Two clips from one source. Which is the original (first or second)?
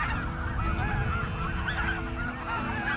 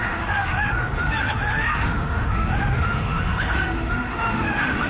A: first